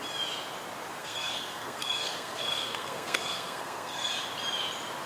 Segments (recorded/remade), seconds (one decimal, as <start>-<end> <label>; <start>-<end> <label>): 0.0-1.0 recorded; 1.0-4.1 remade; 4.1-5.1 recorded